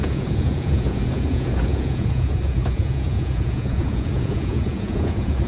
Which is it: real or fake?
fake